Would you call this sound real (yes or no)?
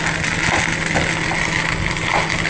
yes